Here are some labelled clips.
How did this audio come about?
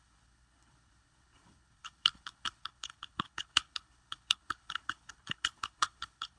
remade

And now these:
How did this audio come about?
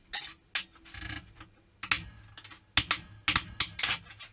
recorded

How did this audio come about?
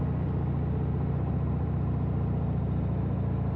recorded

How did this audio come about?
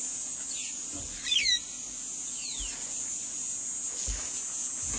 recorded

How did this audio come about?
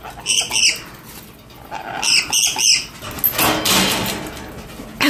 recorded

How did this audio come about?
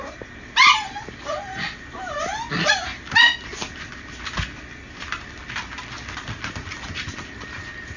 recorded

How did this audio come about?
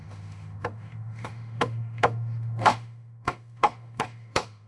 remade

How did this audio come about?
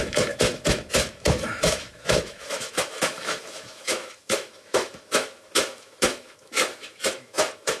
remade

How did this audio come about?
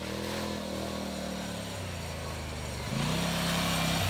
recorded